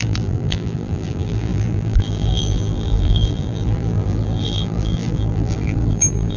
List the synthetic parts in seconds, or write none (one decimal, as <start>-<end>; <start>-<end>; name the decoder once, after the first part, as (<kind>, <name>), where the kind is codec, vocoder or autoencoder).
0.0-6.4 (vocoder, BigVGAN v2)